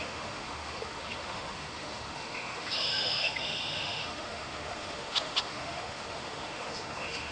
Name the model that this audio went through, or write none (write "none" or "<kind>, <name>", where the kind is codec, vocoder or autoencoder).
autoencoder, DAC-VAE